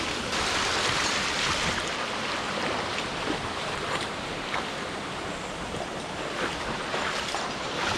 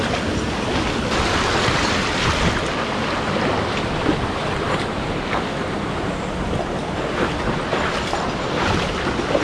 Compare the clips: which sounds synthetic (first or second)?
first